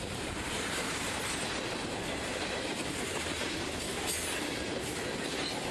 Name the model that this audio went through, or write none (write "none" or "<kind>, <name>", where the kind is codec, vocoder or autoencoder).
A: vocoder, BigVGAN v2